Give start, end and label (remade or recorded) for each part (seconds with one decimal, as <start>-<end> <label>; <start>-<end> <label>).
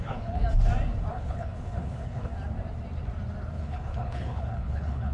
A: 0.0-0.4 remade; 0.4-1.1 recorded; 1.1-2.3 remade; 2.3-3.5 recorded; 3.5-5.1 remade